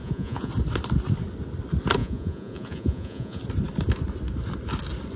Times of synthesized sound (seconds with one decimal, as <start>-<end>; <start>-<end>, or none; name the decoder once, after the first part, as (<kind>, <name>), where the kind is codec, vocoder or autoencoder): 0.0-0.5 (vocoder, Vocos); 2.0-3.4